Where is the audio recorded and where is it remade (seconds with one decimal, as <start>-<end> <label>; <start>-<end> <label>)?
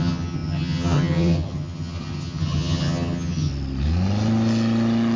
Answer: 0.0-3.5 remade; 3.5-5.2 recorded